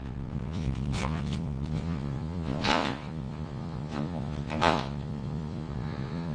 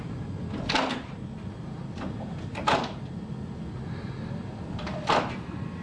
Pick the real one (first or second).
second